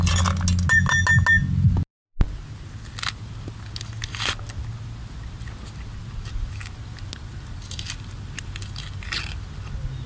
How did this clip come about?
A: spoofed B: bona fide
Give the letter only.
B